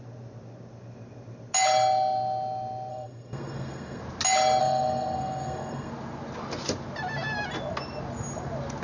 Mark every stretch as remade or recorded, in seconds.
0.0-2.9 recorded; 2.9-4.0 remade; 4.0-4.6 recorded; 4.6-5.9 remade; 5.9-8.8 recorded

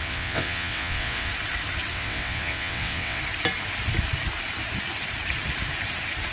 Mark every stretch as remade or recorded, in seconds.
0.0-1.3 remade; 1.3-1.9 recorded; 1.9-3.2 remade; 3.2-6.3 recorded

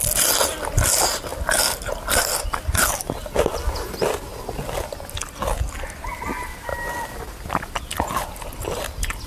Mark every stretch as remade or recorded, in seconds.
0.0-9.3 recorded